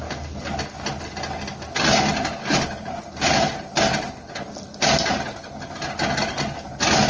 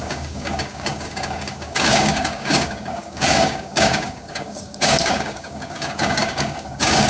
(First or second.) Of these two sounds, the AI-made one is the second